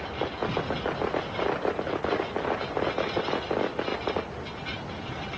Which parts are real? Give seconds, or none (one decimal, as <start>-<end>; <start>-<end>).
0.0-5.4